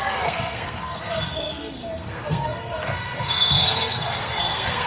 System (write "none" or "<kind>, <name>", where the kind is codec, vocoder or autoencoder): codec, SNAC